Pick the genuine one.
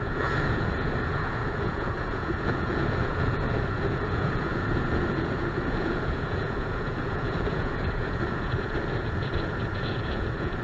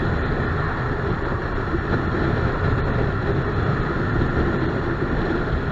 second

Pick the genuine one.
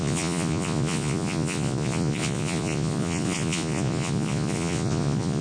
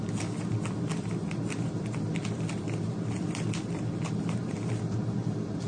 second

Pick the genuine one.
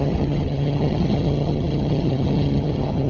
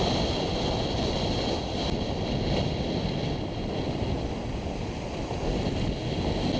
second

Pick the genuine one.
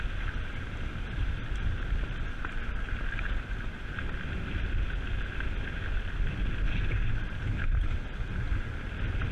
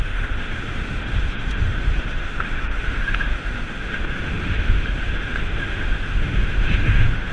first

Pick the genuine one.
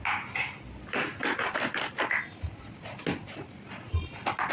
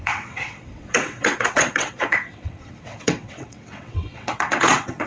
first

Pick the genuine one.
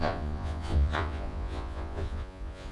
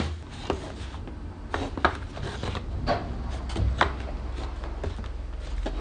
second